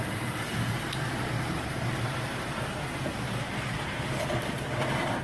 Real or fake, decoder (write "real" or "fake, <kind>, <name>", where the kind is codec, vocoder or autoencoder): fake, vocoder, BigVGAN v2